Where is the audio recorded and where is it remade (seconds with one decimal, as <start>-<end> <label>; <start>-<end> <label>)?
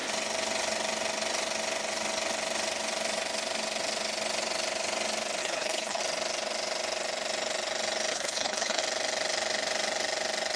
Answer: 0.0-5.4 recorded; 5.4-6.0 remade; 6.0-8.1 recorded; 8.1-8.8 remade; 8.8-10.6 recorded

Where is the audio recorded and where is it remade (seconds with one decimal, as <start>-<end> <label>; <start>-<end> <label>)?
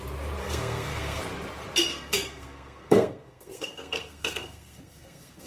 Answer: 0.0-0.4 recorded; 0.4-1.2 remade; 1.2-1.9 recorded; 1.9-5.5 remade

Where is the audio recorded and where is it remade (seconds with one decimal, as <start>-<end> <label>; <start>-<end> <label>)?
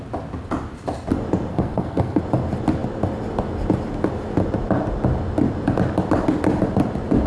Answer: 0.0-1.5 recorded; 1.5-2.2 remade; 2.2-7.3 recorded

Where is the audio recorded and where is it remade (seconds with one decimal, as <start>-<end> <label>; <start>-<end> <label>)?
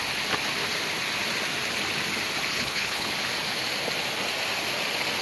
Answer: 0.0-2.5 recorded; 2.5-3.1 remade; 3.1-5.2 recorded